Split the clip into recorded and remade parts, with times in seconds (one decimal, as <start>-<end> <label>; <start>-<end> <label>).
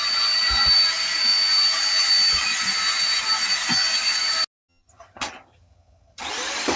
0.0-4.7 recorded; 4.7-6.3 remade; 6.3-6.8 recorded